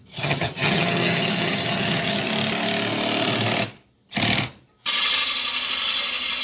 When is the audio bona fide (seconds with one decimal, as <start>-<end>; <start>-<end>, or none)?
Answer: 2.3-6.4